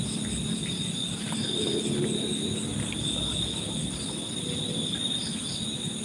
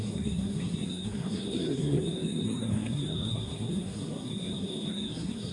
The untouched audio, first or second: first